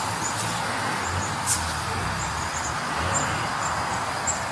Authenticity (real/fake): real